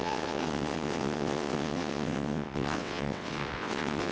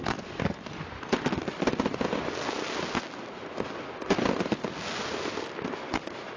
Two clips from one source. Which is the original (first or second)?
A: second